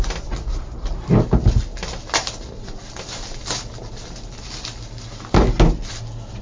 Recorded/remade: recorded